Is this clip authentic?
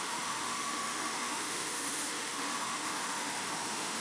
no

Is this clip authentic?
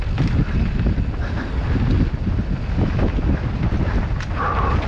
yes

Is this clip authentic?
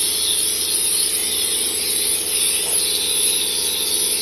yes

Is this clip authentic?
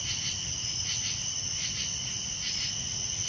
yes